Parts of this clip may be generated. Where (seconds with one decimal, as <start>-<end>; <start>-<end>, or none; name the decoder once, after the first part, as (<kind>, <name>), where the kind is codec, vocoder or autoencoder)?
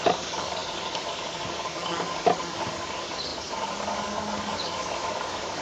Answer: 0.0-5.6 (codec, DAC)